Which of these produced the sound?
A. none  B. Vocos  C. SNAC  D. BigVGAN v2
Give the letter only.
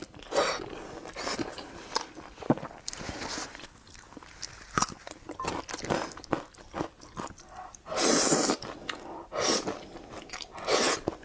A